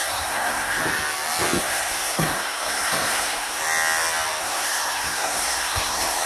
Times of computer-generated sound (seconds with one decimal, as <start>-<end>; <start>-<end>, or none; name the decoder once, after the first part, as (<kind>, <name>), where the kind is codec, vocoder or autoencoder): 0.0-0.8 (codec, SNAC); 1.6-3.6; 4.4-6.3